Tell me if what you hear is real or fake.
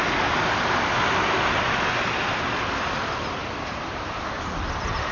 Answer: real